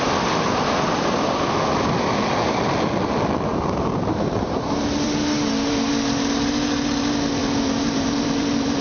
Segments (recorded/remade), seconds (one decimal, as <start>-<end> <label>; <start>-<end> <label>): 0.0-3.5 recorded; 3.5-5.9 remade; 5.9-7.4 recorded; 7.4-8.8 remade